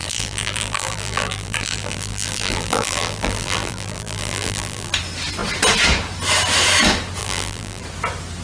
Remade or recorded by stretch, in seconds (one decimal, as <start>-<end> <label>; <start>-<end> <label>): 0.0-4.9 remade; 4.9-7.2 recorded; 7.2-7.8 remade; 7.8-8.4 recorded